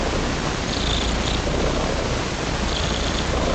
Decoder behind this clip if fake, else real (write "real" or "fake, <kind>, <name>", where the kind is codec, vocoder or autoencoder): fake, vocoder, BigVGAN v2